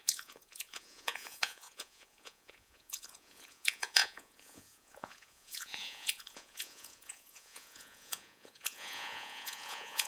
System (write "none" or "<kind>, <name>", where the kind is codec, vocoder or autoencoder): vocoder, Vocos